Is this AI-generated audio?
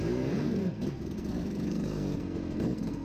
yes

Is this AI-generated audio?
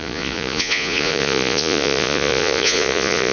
yes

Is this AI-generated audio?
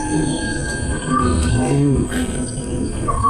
yes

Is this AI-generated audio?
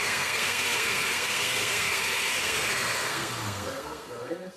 yes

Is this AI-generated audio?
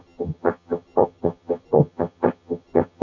yes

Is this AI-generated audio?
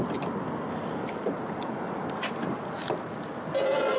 no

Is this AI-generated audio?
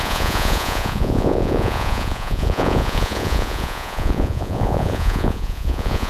yes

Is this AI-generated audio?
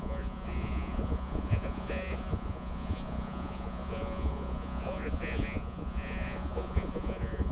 yes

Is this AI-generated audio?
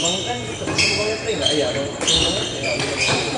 no